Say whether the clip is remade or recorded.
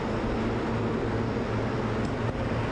recorded